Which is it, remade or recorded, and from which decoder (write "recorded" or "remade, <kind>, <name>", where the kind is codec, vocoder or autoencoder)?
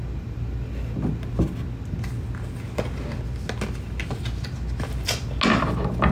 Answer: recorded